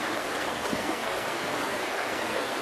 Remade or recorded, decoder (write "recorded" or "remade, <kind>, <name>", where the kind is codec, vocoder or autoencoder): remade, codec, SNAC